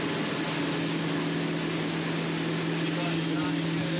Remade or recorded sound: recorded